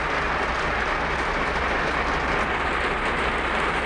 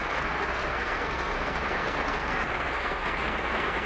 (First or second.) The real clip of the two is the first